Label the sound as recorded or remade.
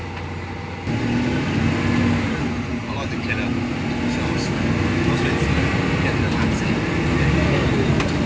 recorded